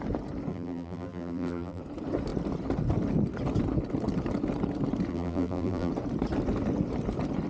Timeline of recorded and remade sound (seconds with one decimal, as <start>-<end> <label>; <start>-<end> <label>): 0.0-0.5 recorded; 0.5-1.8 remade; 1.8-5.1 recorded; 5.1-5.9 remade; 5.9-7.5 recorded